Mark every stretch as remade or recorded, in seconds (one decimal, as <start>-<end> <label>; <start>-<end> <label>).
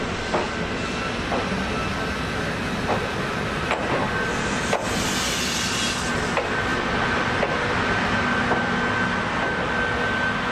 0.0-10.5 recorded